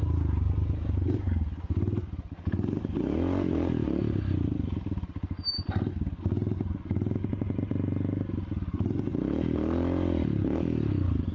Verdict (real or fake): real